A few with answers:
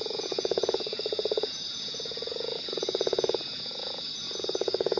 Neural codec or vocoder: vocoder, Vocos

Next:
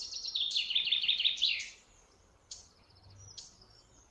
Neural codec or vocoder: none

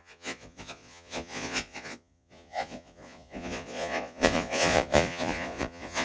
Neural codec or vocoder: vocoder, Vocos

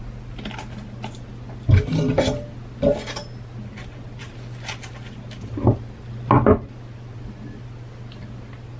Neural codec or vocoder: none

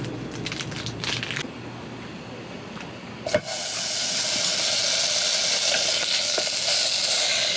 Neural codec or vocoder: none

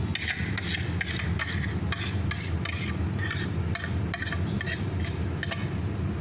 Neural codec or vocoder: none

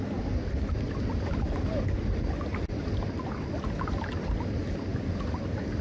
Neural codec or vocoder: none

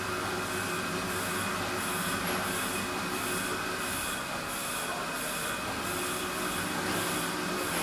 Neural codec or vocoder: none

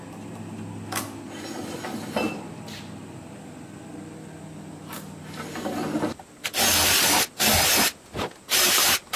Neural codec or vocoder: none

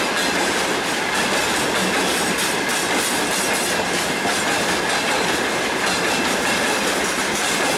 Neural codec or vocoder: none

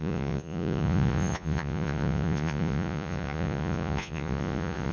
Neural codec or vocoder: vocoder, Vocos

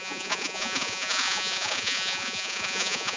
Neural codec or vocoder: vocoder, Vocos